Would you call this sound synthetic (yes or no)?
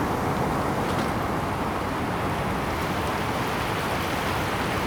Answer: no